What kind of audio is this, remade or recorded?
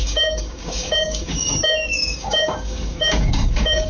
remade